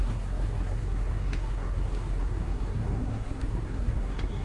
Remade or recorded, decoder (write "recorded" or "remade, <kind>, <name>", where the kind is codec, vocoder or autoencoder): remade, codec, SNAC